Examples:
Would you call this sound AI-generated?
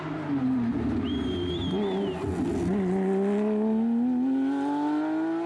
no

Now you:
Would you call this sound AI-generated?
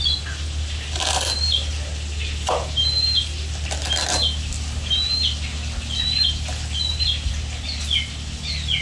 no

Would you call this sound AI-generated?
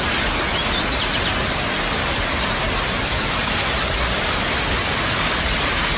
no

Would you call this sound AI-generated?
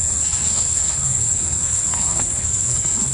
yes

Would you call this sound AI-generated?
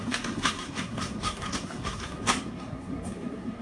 yes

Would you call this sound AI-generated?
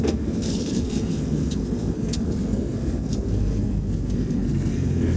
yes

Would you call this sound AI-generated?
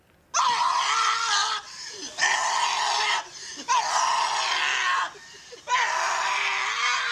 no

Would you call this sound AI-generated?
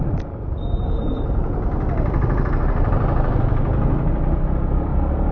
no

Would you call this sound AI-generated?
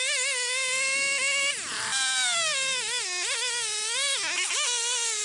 no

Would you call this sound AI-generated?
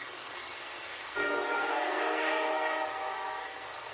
yes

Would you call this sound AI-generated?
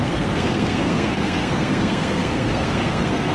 yes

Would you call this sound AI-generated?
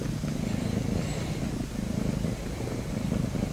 no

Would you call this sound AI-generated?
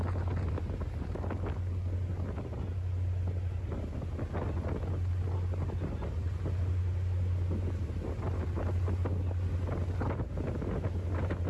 no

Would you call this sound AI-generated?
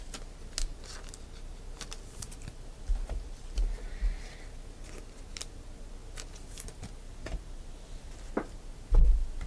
no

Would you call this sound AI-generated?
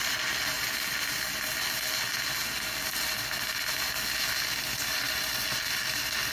no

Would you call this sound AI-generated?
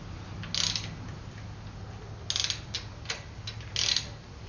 no